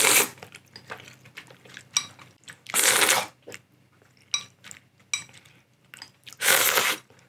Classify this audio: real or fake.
real